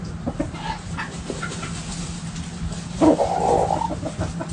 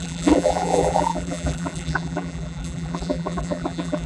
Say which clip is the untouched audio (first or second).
first